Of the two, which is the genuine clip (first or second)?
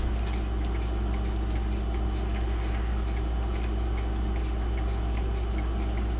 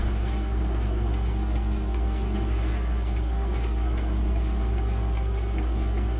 first